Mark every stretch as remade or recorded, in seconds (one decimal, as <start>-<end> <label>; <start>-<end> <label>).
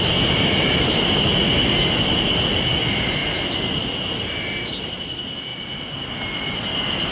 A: 0.0-7.1 recorded